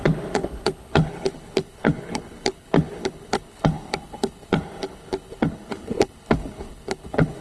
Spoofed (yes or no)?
yes